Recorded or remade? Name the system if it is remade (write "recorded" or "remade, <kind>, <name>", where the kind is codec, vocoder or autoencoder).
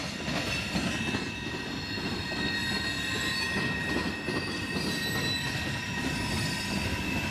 recorded